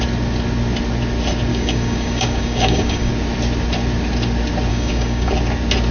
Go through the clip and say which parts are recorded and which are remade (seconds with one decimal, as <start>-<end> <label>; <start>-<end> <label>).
0.0-1.5 recorded; 1.5-3.1 remade; 3.1-4.7 recorded; 4.7-5.3 remade; 5.3-5.9 recorded